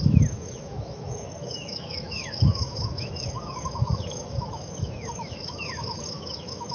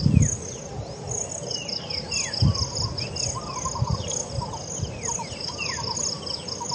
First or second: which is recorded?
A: second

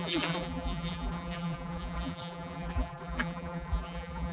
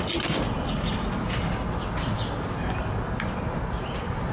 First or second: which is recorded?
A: second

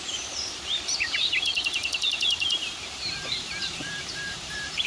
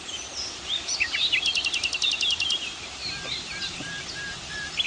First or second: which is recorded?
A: second